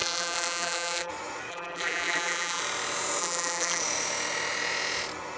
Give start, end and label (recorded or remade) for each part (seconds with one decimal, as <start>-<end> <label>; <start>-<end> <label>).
0.0-1.1 remade; 1.1-1.5 recorded; 1.5-2.6 remade; 2.6-3.2 recorded; 3.2-3.8 remade; 3.8-5.4 recorded